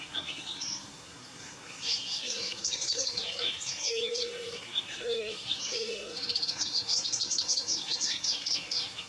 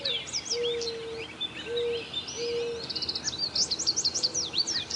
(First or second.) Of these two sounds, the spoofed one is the first